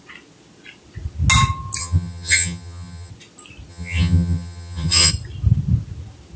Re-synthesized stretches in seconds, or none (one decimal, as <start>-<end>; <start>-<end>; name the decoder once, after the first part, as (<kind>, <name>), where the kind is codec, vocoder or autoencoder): 1.8-3.1 (vocoder, HiFi-GAN); 3.7-5.1